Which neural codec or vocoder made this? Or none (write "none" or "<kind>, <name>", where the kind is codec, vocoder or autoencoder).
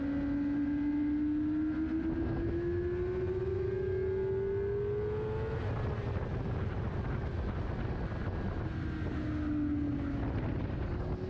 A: none